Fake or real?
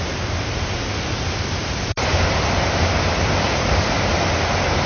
real